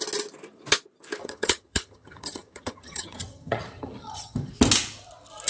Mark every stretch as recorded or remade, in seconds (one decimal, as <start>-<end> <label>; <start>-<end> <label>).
0.0-1.2 recorded; 1.2-4.5 remade; 4.5-5.5 recorded